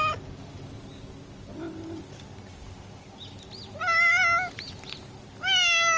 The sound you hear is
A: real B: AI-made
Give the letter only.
A